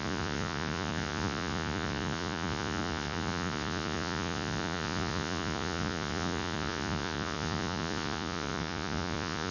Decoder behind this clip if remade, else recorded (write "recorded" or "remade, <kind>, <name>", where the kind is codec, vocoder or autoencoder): remade, vocoder, Vocos